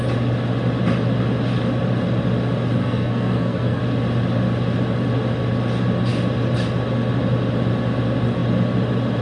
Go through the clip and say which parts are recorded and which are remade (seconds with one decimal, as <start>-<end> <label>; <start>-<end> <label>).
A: 0.0-2.8 recorded; 2.8-3.8 remade; 3.8-9.2 recorded